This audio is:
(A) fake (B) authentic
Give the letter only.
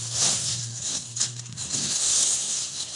A